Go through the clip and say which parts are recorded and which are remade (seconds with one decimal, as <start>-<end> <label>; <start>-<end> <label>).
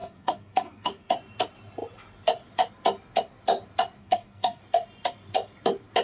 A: 0.0-1.1 remade; 1.1-4.0 recorded; 4.0-4.6 remade; 4.6-6.0 recorded